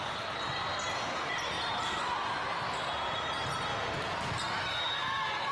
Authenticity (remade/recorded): recorded